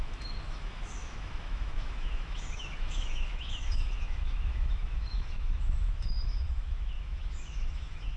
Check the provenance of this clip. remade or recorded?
remade